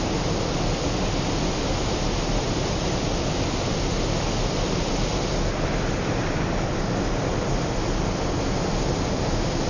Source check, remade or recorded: recorded